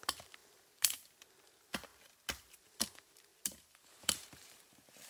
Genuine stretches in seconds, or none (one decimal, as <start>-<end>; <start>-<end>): 0.4-1.4; 1.9-2.4